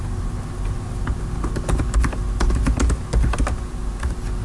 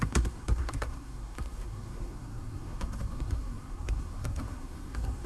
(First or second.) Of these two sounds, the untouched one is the first